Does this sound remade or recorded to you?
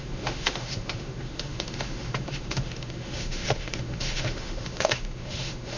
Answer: remade